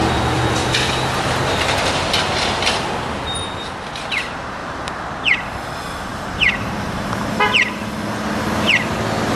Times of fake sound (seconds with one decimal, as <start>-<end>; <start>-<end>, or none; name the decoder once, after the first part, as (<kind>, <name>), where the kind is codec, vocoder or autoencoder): 0.0-0.9 (vocoder, BigVGAN v2); 4.6-5.1; 6.1-7.2